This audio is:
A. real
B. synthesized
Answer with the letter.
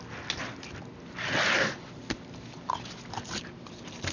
A